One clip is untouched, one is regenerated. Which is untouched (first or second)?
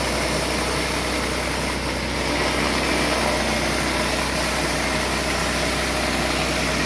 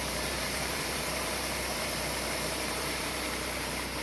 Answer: first